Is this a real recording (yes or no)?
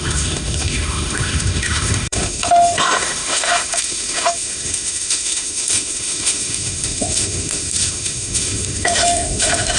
no